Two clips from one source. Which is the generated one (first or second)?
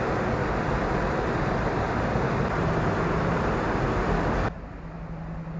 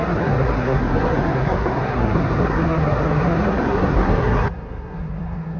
second